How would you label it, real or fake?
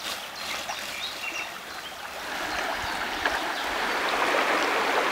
real